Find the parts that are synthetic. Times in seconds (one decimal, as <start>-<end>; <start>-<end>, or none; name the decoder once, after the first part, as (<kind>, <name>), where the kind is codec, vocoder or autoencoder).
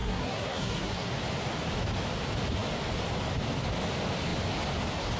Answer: 0.0-1.1 (codec, SNAC)